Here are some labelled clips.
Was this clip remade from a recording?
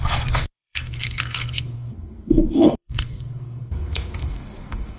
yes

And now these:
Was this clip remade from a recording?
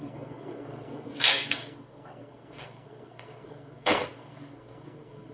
yes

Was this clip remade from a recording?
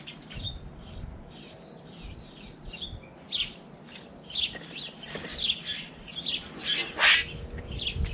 no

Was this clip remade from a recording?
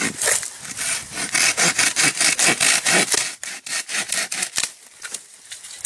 no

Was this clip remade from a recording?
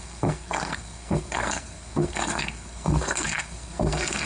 yes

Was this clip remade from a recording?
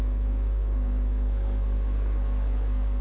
yes